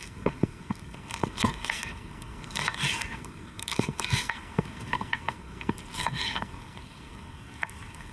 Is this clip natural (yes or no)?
no